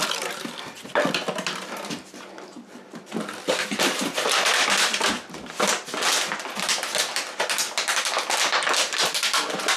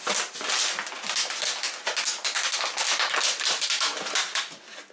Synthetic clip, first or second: first